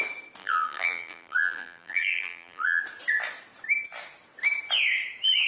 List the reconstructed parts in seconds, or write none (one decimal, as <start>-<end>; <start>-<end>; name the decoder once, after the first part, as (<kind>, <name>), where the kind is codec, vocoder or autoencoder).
0.4-2.8 (vocoder, BigVGAN v2)